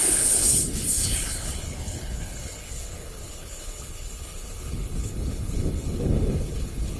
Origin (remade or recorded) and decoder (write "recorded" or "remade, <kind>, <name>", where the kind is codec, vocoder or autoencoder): remade, codec, HILCodec